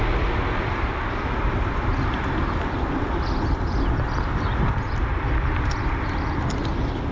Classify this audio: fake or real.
real